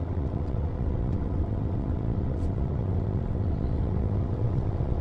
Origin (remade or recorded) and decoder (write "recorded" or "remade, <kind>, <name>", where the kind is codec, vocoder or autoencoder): remade, vocoder, WaveNeXt